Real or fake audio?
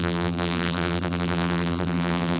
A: fake